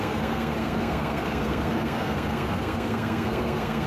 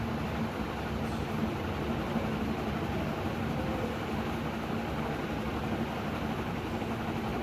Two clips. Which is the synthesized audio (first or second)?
first